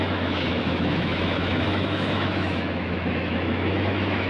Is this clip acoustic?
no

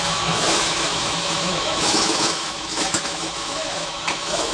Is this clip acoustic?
no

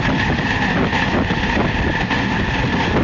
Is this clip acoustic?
yes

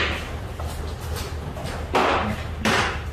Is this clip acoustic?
yes